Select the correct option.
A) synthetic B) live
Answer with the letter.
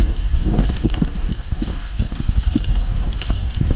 A